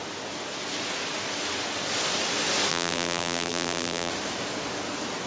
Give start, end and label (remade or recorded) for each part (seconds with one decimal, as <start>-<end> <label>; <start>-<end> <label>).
0.0-2.7 recorded; 2.7-4.1 remade; 4.1-5.3 recorded